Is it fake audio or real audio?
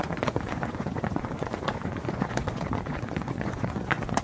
fake